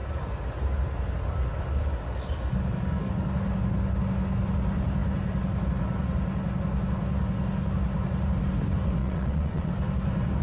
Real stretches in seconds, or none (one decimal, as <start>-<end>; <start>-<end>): 0.0-9.0; 9.7-10.4